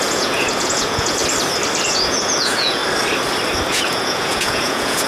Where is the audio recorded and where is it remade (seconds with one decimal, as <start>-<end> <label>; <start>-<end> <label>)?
0.0-1.2 remade; 1.2-1.9 recorded; 1.9-2.8 remade; 2.8-3.7 recorded; 3.7-5.1 remade